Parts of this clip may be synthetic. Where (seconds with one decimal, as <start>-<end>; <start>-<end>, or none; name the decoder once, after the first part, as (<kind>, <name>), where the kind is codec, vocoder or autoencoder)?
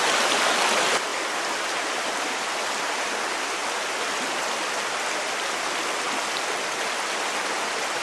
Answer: none